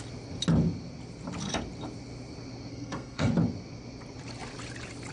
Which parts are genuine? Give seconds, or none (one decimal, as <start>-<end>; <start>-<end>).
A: 0.0-2.7; 3.3-5.1